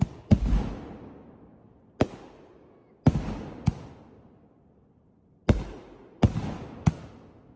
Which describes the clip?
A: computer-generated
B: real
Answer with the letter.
B